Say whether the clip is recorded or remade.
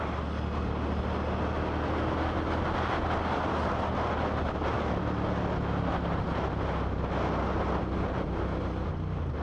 recorded